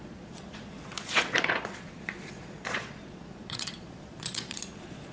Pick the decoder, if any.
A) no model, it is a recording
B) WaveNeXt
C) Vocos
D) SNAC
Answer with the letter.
C